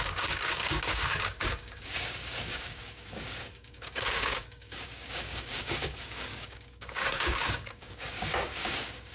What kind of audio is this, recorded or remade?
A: remade